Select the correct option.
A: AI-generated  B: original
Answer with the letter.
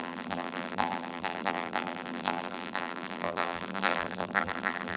A